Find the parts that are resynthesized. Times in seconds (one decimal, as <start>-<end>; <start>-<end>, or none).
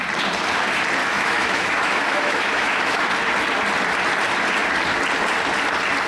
1.0-3.1